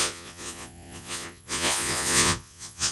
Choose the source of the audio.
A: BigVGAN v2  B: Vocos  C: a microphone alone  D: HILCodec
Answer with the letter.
B